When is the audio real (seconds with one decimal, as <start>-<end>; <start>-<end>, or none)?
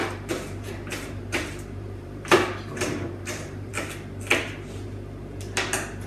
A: 3.7-6.1